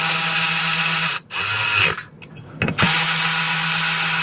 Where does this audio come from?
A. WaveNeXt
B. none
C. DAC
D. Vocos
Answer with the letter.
B